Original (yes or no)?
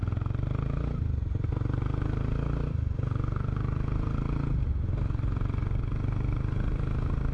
yes